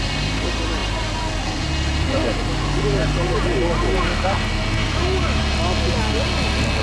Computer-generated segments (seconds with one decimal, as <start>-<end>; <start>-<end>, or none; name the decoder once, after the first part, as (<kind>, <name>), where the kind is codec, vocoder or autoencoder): 4.8-5.4 (autoencoder, DAC-VAE)